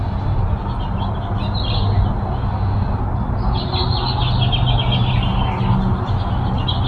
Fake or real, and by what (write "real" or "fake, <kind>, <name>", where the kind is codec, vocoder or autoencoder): real